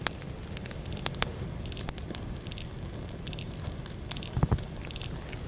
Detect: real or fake real